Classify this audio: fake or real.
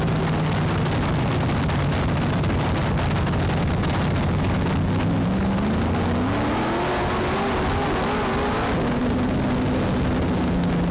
real